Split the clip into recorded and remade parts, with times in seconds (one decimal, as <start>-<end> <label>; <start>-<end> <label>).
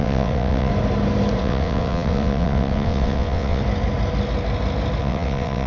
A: 0.0-0.7 remade; 0.7-1.4 recorded; 1.4-3.6 remade; 3.6-5.0 recorded; 5.0-5.7 remade